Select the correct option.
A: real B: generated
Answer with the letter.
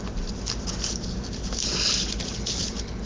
A